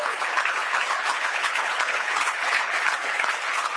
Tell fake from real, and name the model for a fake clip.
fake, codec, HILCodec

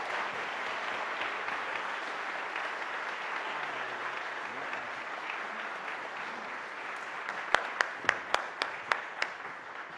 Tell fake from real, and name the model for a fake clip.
real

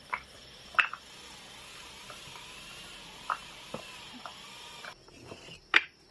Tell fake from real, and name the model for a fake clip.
real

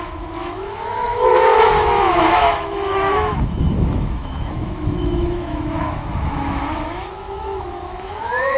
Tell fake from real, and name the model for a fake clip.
fake, autoencoder, DAC-VAE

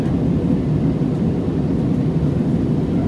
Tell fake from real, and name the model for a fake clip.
real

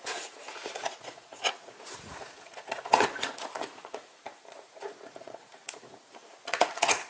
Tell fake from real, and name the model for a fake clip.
fake, vocoder, Vocos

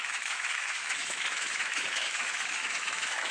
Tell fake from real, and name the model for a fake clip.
fake, autoencoder, DAC-VAE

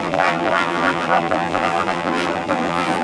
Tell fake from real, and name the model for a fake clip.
fake, vocoder, BigVGAN v2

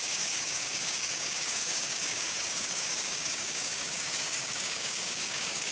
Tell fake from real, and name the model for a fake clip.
fake, codec, DAC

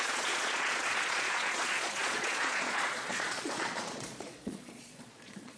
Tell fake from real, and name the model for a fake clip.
fake, vocoder, Vocos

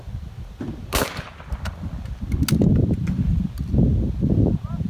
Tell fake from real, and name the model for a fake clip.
real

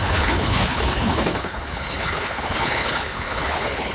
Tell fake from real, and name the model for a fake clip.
fake, codec, HILCodec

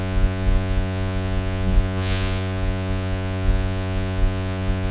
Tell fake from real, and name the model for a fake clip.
fake, vocoder, Vocos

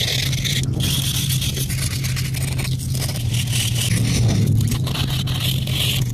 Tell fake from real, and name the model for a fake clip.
real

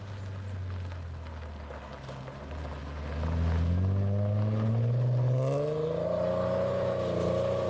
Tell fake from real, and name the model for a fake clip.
real